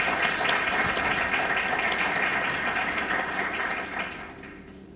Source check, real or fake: real